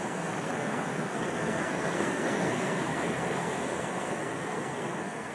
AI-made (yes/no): yes